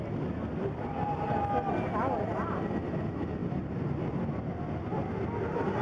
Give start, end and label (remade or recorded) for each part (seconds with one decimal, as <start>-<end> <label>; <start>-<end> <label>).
0.0-5.8 recorded